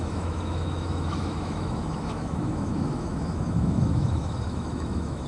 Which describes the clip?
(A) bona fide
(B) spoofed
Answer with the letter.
B